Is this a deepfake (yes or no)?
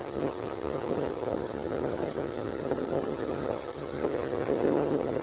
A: yes